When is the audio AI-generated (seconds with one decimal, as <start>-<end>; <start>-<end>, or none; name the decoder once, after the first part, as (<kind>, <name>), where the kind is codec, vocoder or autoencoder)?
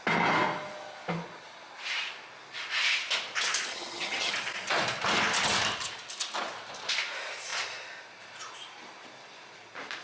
3.7-4.3 (vocoder, HiFi-GAN)